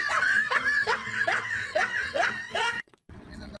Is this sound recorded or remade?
remade